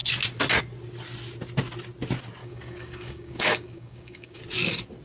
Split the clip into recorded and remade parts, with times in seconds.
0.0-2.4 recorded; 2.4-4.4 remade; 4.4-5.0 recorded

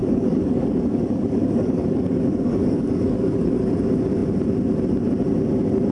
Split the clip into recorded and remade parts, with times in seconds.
0.0-3.5 remade; 3.5-5.9 recorded

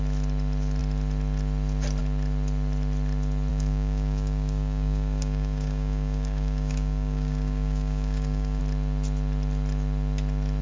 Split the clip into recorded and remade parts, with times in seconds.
0.0-3.5 recorded; 3.5-8.6 remade; 8.6-10.6 recorded

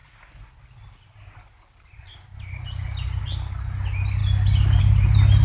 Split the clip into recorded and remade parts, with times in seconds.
0.0-5.4 recorded

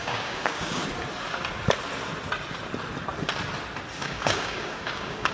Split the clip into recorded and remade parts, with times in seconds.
0.0-0.8 remade; 0.8-4.0 recorded; 4.0-5.3 remade

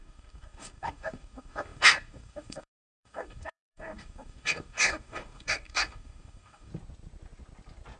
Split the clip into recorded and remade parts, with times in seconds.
0.0-6.7 remade; 6.7-8.0 recorded

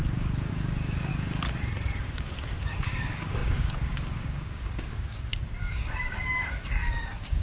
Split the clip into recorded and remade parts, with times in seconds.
0.0-1.1 remade; 1.1-2.0 recorded; 2.0-7.4 remade